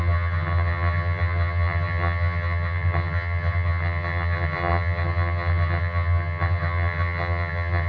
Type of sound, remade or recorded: remade